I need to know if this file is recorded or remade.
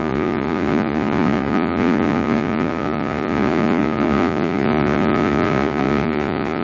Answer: remade